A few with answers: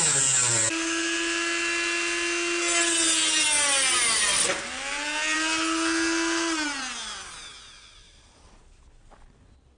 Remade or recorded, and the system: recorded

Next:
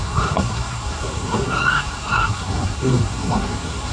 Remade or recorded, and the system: remade, codec, SNAC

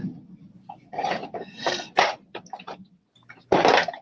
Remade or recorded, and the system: recorded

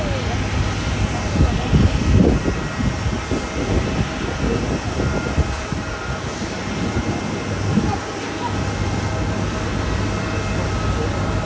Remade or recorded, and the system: recorded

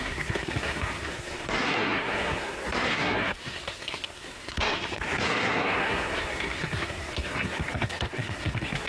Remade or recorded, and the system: remade, codec, SNAC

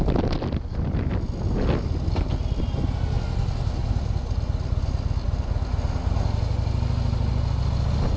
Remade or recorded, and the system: recorded